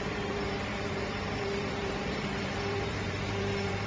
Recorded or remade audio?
remade